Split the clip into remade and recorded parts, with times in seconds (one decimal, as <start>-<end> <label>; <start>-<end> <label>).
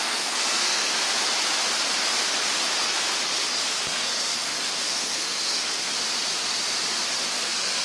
0.0-0.9 remade; 0.9-3.8 recorded; 3.8-5.9 remade; 5.9-7.3 recorded; 7.3-7.8 remade